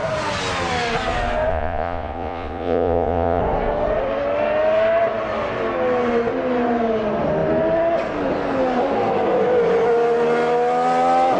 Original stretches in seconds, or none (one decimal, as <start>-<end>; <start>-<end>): 0.0-1.5; 3.4-11.4